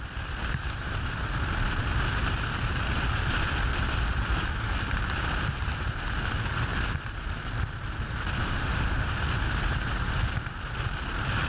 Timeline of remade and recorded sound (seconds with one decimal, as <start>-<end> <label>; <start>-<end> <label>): 0.0-8.4 recorded; 8.4-9.2 remade; 9.2-11.5 recorded